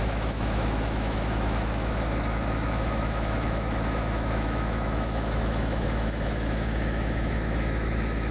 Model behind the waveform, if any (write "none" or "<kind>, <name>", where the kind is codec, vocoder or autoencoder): autoencoder, DAC-VAE